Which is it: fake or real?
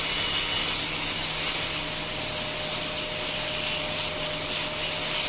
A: real